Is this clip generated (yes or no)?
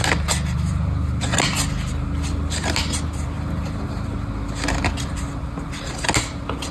no